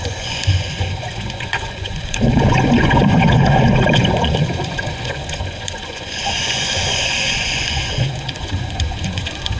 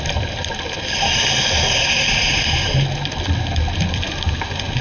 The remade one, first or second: first